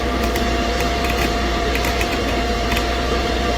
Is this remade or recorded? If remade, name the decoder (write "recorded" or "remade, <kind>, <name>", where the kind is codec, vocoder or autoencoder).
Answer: remade, vocoder, BigVGAN v2